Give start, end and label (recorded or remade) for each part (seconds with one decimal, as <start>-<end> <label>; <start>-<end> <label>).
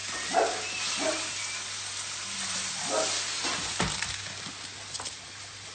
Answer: 0.0-5.7 recorded